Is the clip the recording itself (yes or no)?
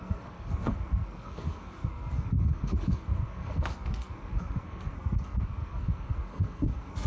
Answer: no